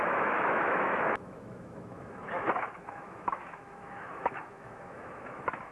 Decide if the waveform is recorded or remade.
remade